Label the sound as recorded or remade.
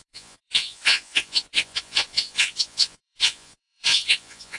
remade